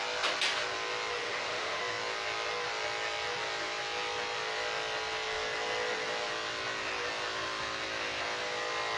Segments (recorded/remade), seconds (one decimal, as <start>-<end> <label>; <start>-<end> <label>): 0.0-1.2 recorded; 1.2-1.8 remade; 1.8-9.0 recorded